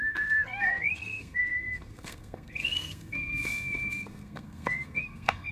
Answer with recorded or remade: remade